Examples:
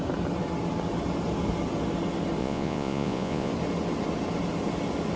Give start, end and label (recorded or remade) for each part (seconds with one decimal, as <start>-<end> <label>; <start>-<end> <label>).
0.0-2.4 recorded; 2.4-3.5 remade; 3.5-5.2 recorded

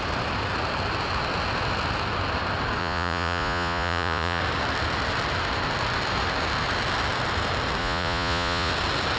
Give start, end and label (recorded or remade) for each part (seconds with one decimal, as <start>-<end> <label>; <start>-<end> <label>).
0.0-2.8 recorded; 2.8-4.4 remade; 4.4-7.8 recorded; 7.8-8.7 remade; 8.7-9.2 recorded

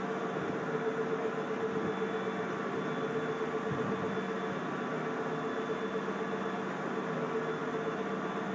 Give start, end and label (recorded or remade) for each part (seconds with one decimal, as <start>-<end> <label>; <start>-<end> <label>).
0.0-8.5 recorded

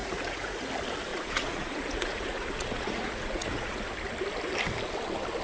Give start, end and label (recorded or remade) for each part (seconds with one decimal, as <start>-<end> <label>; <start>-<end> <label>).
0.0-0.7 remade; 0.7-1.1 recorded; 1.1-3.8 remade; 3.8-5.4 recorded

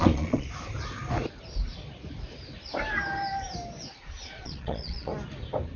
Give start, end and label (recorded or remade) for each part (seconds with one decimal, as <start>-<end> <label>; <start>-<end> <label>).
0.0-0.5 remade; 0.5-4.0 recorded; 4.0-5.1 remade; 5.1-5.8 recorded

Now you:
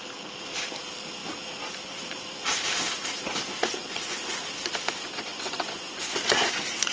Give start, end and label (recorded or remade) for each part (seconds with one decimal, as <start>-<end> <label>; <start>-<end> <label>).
0.0-3.8 recorded; 3.8-4.4 remade; 4.4-5.3 recorded; 5.3-6.2 remade; 6.2-6.9 recorded

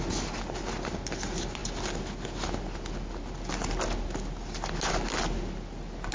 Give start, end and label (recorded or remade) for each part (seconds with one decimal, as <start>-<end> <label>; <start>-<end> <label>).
0.0-6.1 recorded

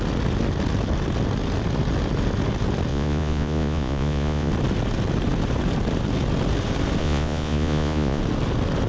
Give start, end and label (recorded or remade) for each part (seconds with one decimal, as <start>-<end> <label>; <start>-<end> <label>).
0.0-2.9 recorded; 2.9-4.5 remade; 4.5-7.0 recorded; 7.0-8.2 remade; 8.2-8.9 recorded